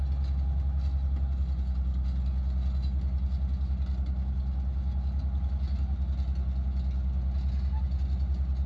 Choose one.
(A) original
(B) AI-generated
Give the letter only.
A